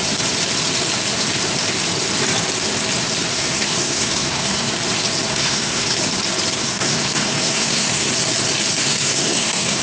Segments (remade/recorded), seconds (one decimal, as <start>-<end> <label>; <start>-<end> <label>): 0.0-3.3 recorded; 3.3-4.7 remade; 4.7-5.3 recorded; 5.3-6.0 remade; 6.0-6.6 recorded; 6.6-8.1 remade; 8.1-8.8 recorded; 8.8-9.8 remade